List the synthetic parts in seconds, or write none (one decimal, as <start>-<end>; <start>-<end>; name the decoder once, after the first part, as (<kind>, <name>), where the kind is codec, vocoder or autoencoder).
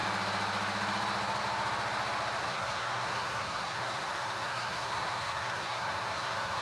2.4-6.6 (codec, SNAC)